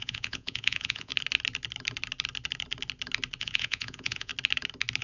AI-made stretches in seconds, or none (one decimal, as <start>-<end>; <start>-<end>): 0.0-1.1; 3.4-4.3